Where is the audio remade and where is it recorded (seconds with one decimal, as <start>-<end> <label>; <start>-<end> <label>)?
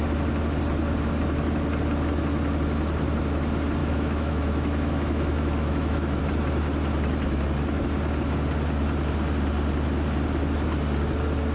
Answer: 0.0-3.8 recorded; 3.8-6.2 remade; 6.2-11.5 recorded